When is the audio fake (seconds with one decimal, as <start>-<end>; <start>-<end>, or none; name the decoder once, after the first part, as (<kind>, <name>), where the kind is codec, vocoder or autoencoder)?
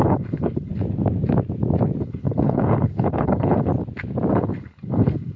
0.0-0.7 (codec, HILCodec); 2.0-3.7; 4.3-5.4